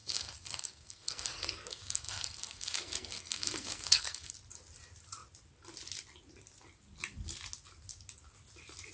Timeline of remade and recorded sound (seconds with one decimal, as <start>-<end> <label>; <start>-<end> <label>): 0.0-4.3 remade; 4.3-8.9 recorded